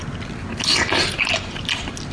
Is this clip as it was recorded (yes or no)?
yes